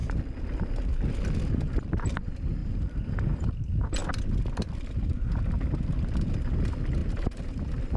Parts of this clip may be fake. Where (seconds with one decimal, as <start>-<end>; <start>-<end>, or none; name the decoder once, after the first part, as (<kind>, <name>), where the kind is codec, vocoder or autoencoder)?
2.6-3.5 (vocoder, BigVGAN v2); 7.0-7.6